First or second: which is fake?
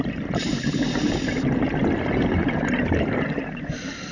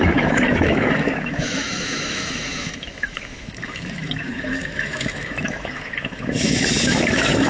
second